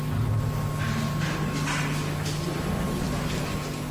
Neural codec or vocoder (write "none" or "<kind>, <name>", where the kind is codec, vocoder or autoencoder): none